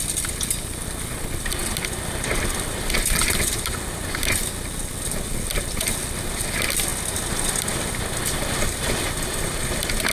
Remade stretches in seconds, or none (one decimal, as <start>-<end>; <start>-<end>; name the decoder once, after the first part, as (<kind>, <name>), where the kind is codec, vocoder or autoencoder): none

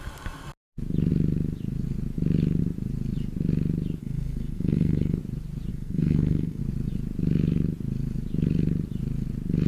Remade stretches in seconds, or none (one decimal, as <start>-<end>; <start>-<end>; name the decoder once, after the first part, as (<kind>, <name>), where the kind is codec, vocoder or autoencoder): 4.0-5.2 (codec, SNAC); 5.7-6.6

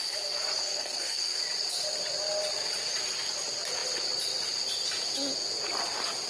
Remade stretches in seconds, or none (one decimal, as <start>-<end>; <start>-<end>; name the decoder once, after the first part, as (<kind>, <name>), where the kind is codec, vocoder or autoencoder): 0.6-1.4 (codec, SNAC)

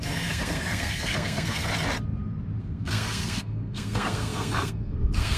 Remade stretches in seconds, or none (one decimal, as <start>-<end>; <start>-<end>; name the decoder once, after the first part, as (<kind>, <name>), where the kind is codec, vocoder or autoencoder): 0.0-1.7 (codec, SNAC); 2.6-5.4

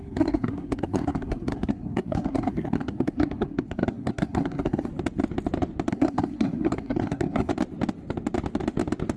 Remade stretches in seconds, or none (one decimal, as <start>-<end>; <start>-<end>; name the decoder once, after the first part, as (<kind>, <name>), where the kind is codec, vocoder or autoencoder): 0.0-4.9 (codec, SNAC); 5.9-7.5